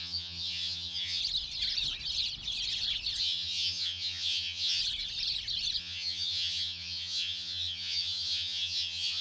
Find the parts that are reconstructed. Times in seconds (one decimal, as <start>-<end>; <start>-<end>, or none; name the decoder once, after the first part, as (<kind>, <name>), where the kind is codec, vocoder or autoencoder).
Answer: 0.0-1.2 (vocoder, HiFi-GAN); 3.2-4.8; 5.8-9.2